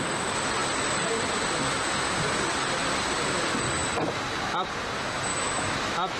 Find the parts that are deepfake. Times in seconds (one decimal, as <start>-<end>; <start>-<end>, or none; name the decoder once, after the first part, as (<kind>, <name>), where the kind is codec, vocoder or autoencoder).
5.3-6.2 (autoencoder, DAC-VAE)